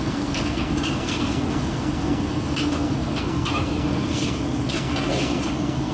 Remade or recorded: remade